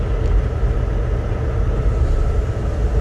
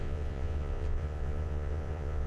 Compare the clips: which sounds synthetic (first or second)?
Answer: second